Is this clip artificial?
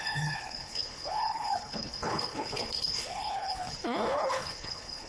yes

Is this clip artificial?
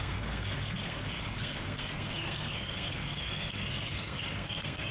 yes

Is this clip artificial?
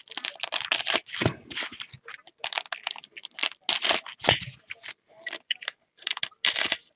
no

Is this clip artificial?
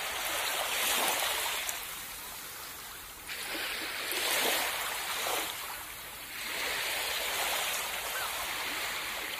no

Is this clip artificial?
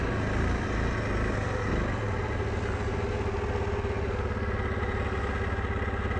no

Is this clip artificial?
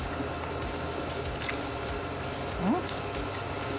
no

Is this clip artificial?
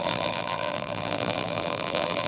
yes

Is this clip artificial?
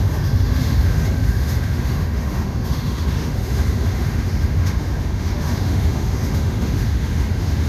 yes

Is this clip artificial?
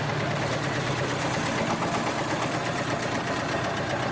yes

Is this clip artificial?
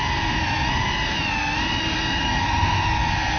no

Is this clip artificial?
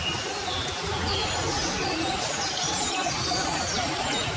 no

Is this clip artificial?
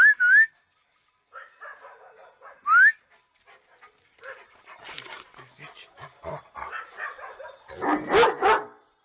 no